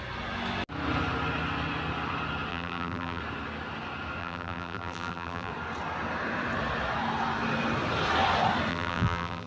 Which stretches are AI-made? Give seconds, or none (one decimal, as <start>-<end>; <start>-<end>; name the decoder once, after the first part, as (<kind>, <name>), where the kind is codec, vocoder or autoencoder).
2.5-3.2 (vocoder, BigVGAN v2); 4.2-5.5; 8.7-9.5